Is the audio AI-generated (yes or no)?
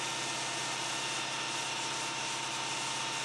no